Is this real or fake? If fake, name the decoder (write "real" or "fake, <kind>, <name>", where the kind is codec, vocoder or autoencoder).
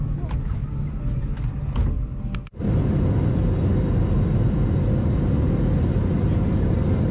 real